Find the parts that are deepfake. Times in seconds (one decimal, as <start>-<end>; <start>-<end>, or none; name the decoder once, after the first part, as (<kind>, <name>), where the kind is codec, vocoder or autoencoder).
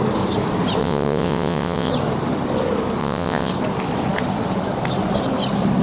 0.8-1.9 (vocoder, WaveNeXt); 3.0-3.5